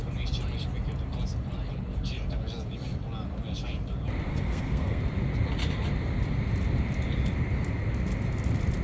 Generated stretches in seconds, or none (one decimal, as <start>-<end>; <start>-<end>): 4.3-5.0